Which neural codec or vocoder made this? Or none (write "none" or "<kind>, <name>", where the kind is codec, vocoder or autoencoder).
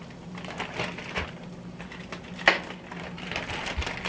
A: none